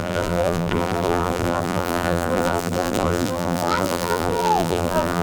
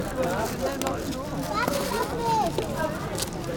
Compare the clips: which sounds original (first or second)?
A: second